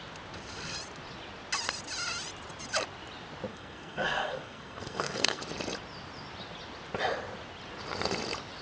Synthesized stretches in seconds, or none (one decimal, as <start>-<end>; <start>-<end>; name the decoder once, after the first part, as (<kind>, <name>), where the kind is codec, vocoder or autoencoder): 3.5-5.4 (codec, SNAC)